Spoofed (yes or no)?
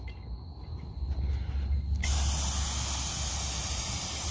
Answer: no